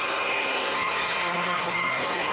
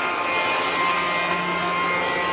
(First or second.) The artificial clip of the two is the first